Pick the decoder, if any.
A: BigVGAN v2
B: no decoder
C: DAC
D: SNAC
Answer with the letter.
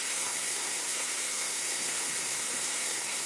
D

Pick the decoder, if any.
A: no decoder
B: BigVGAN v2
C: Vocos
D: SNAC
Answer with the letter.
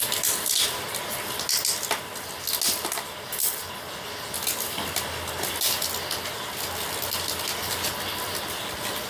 A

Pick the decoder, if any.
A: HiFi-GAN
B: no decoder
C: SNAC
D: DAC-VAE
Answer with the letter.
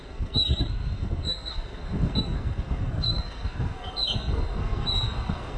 C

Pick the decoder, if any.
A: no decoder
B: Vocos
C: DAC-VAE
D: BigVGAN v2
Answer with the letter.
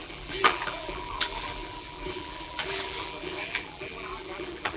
D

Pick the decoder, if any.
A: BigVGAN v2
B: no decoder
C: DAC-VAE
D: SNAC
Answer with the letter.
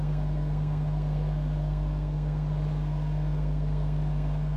D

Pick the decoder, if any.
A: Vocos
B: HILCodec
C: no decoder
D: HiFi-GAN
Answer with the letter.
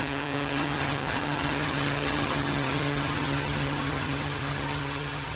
D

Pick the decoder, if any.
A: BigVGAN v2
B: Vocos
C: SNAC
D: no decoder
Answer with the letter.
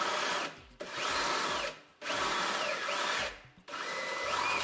D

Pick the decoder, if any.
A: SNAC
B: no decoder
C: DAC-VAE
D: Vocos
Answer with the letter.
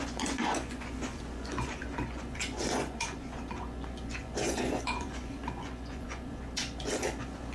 D